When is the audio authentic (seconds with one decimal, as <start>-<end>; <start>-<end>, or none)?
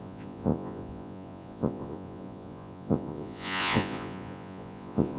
none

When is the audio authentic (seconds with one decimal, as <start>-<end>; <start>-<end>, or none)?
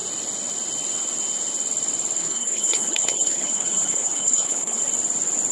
0.0-2.2; 4.8-5.5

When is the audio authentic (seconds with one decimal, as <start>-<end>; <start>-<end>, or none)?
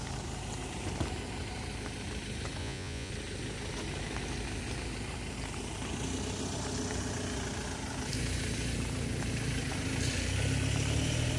0.0-2.6; 3.1-11.4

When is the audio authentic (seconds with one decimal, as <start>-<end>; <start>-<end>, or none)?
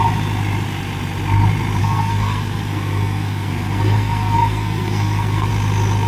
0.0-1.8; 5.5-6.1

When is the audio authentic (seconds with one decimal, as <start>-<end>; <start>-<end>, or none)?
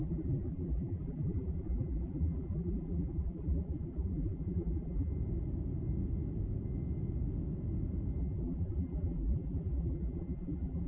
5.1-8.2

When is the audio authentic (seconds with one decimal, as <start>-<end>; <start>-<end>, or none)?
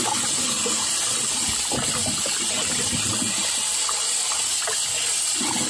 0.0-5.7